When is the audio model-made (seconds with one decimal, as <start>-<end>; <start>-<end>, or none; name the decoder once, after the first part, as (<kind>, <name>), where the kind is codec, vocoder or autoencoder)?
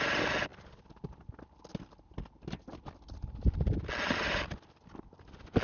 none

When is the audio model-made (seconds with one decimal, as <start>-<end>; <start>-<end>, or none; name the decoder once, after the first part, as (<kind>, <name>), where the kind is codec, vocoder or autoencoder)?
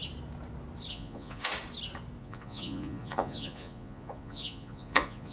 0.9-1.5 (vocoder, Vocos); 2.2-5.3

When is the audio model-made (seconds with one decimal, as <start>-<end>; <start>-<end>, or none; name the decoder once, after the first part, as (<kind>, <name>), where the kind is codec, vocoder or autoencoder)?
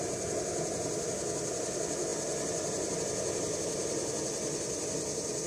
none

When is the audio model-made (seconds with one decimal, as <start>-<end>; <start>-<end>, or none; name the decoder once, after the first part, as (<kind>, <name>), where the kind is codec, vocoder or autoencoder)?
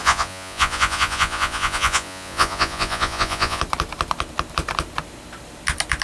0.0-3.6 (vocoder, Vocos)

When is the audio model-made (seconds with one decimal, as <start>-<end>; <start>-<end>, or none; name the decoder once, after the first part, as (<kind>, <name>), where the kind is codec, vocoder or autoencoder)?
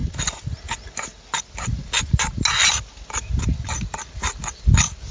none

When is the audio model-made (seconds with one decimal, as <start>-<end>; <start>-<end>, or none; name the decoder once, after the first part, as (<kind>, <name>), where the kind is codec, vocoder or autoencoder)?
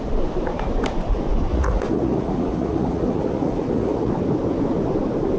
1.5-4.1 (vocoder, Vocos)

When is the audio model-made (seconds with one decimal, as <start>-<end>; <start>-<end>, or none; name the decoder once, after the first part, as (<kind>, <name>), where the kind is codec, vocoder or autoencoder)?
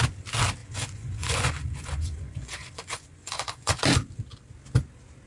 0.6-3.8 (vocoder, Vocos)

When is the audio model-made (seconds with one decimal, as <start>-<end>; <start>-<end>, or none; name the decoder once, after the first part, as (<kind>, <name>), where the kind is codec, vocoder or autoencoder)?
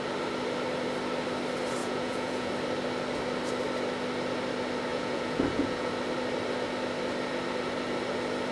1.8-2.5 (vocoder, Vocos); 4.9-5.9